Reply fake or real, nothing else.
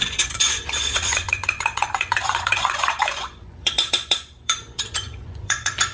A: fake